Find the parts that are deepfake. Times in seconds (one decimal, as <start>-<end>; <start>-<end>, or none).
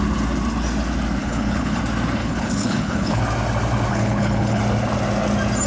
1.2-1.8; 2.2-3.2; 3.9-4.6